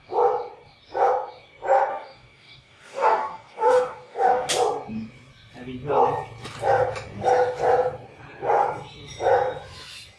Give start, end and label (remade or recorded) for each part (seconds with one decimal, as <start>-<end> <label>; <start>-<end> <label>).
0.0-1.9 recorded; 1.9-4.5 remade; 4.5-10.2 recorded